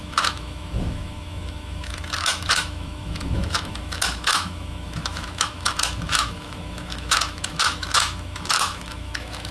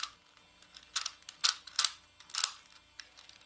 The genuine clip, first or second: second